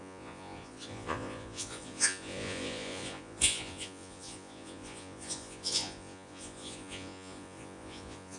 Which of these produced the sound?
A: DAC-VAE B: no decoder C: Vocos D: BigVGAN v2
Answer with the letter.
C